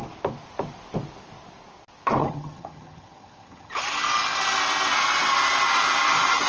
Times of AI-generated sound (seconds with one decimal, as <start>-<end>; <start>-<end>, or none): 2.2-3.7